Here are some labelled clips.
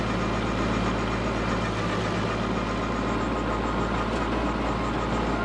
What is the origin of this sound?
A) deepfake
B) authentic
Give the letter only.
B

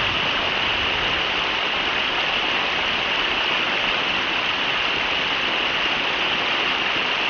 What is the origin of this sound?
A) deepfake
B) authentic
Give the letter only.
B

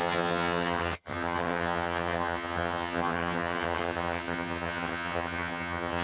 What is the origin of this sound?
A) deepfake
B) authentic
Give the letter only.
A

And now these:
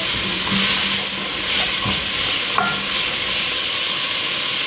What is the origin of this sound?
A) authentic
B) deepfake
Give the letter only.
A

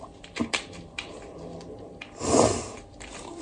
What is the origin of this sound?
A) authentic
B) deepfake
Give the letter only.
B